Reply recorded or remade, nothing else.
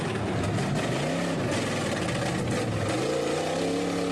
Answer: recorded